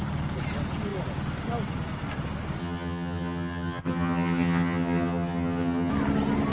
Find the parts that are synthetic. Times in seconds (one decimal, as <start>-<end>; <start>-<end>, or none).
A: 2.6-5.9